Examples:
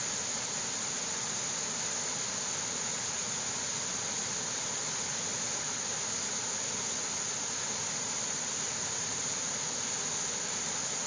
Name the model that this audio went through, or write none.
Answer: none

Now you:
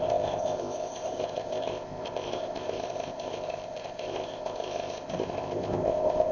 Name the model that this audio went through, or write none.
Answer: codec, ZipCodec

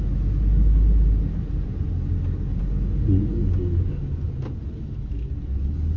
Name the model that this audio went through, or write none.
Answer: none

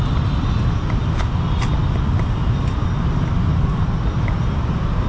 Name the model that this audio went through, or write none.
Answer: none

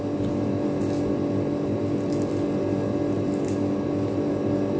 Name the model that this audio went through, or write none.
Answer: none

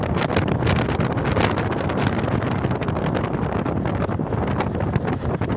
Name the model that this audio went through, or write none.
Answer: none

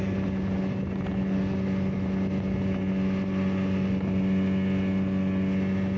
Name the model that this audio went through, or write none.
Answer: none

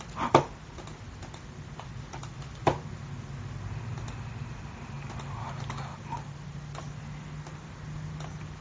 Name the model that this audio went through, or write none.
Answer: none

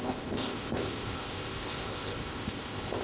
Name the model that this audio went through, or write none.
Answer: codec, ZipCodec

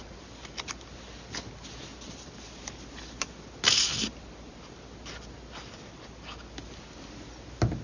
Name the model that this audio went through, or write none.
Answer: none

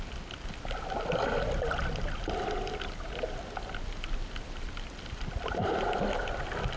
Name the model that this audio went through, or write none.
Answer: none